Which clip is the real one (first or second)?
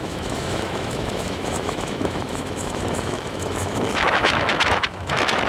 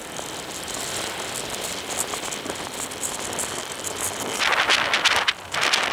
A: second